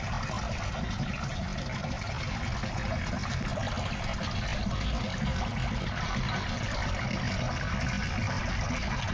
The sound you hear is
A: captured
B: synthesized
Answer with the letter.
A